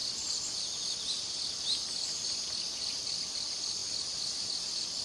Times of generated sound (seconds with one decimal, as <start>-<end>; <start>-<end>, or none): 3.0-3.8; 4.6-5.0